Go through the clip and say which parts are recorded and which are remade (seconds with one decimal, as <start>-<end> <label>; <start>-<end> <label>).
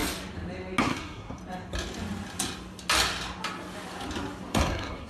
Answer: 0.0-0.8 recorded; 0.8-1.4 remade; 1.4-4.5 recorded; 4.5-5.1 remade